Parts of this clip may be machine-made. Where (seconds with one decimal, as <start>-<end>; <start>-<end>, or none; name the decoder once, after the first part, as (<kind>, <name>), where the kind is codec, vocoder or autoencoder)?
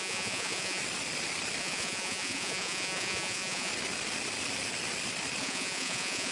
0.0-0.8 (vocoder, Vocos); 1.6-3.7; 5.4-6.3